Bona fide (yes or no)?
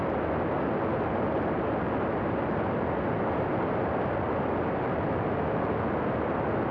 yes